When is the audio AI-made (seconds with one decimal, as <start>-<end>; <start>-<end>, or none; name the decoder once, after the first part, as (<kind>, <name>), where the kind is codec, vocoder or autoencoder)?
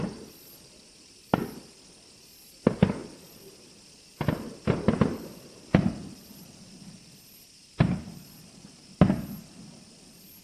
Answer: 3.0-8.0 (vocoder, BigVGAN v2)